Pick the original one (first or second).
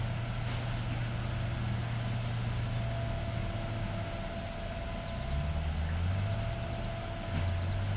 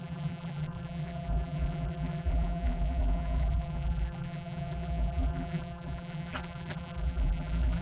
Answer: first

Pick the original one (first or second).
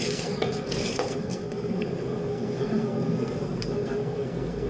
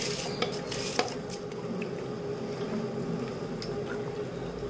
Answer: second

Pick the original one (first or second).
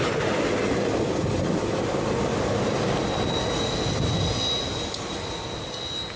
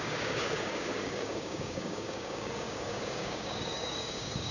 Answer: first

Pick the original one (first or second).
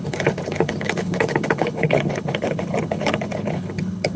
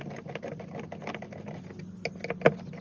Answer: second